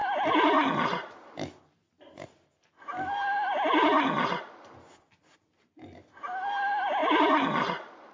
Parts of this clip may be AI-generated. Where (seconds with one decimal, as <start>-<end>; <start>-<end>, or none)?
none